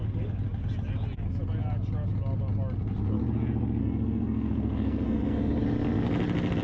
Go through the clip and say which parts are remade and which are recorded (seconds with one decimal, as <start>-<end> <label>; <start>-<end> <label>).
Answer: 0.0-3.8 recorded; 3.8-5.6 remade; 5.6-6.6 recorded